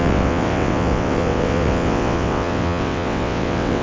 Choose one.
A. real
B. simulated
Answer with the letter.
B